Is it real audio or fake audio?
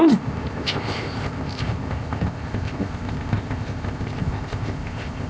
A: fake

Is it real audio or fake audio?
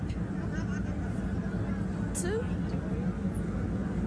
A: real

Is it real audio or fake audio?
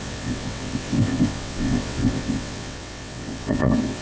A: fake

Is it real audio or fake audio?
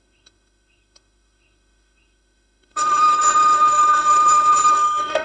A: fake